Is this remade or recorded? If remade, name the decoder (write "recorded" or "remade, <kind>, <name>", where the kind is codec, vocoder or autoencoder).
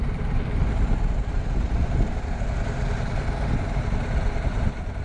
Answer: recorded